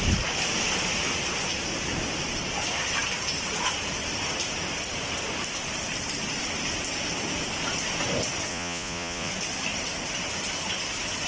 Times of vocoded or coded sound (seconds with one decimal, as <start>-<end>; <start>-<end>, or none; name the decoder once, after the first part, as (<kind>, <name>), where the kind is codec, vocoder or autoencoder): 8.5-9.3 (vocoder, Vocos)